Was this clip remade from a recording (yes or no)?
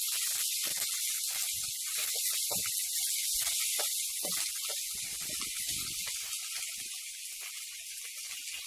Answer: no